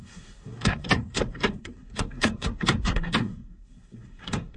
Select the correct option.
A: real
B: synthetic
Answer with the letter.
B